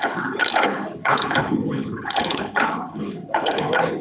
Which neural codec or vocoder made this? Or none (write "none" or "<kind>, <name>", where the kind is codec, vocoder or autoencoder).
codec, HILCodec